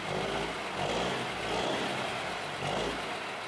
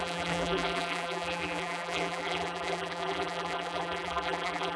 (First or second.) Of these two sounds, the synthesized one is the second